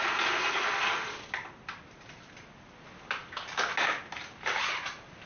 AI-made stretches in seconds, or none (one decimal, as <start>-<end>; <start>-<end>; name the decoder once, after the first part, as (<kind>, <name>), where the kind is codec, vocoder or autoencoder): none